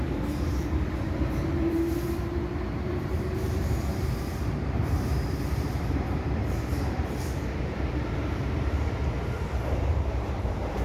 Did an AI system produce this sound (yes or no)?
yes